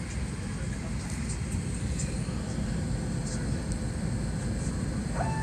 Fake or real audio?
real